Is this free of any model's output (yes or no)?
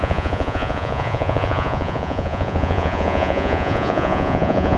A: no